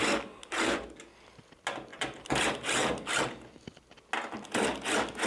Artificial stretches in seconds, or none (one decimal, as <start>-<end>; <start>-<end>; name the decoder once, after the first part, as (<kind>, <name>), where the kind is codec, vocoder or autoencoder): none